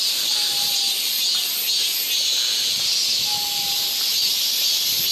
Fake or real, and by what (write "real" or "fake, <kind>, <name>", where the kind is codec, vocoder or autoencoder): real